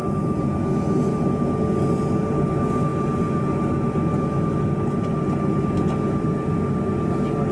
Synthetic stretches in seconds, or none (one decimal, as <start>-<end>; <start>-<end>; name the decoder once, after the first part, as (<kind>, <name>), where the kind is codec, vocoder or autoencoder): none